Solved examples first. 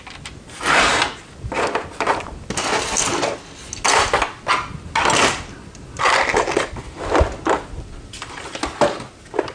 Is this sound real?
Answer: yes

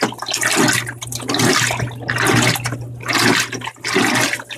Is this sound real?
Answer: yes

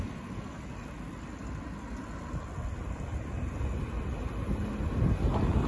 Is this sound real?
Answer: yes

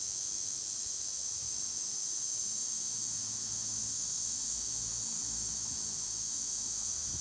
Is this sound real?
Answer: no